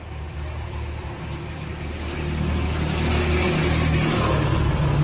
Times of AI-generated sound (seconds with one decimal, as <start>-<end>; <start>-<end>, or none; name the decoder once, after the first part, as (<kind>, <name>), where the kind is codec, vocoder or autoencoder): 0.0-1.7 (vocoder, BigVGAN v2)